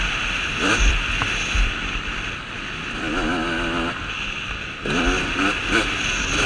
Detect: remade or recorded recorded